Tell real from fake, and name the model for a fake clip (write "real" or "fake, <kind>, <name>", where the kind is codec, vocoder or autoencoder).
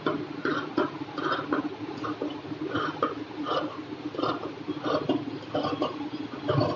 real